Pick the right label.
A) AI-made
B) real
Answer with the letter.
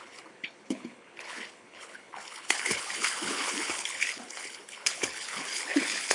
A